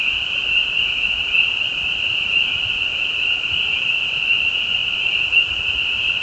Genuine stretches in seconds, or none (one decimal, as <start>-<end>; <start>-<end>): none